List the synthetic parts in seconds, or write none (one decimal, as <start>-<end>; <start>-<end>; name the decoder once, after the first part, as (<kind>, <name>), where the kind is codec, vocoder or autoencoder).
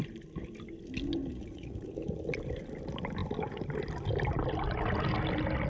1.3-1.9 (vocoder, Vocos)